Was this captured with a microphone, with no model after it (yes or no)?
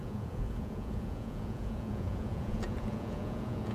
no